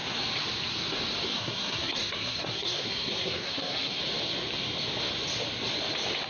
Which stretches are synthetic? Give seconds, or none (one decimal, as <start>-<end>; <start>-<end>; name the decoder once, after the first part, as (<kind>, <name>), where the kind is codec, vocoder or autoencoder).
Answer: 1.3-4.0 (codec, SNAC)